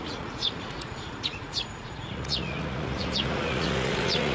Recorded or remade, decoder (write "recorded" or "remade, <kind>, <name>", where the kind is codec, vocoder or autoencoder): remade, vocoder, Vocos